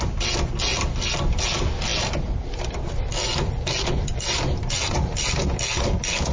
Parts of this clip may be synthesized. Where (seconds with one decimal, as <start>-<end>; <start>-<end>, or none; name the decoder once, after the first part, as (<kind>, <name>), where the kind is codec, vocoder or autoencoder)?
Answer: none